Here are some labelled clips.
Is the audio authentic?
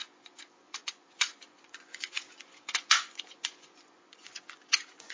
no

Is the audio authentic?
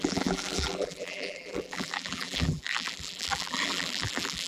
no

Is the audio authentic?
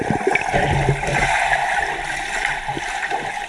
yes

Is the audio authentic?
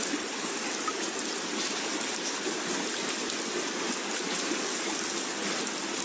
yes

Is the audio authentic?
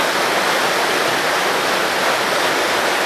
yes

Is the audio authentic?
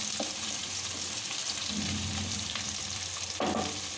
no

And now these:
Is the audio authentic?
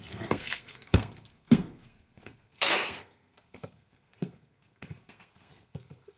no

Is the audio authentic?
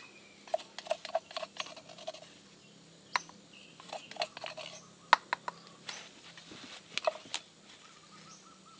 yes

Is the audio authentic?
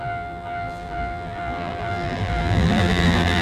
no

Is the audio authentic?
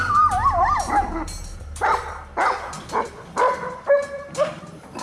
no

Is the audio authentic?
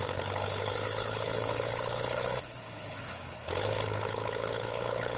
no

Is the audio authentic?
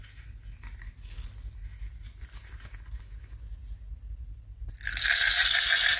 yes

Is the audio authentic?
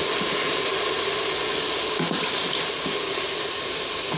yes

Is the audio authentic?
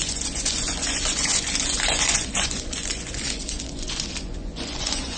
no